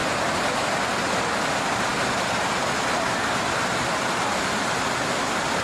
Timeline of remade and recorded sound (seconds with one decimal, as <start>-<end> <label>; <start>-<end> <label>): 0.0-5.6 recorded